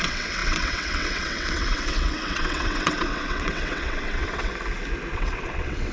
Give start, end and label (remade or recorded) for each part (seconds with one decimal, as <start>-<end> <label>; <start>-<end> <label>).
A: 0.0-4.5 remade; 4.5-5.1 recorded; 5.1-5.9 remade